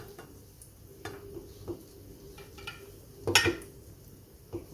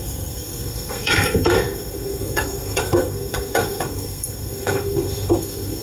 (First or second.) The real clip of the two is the first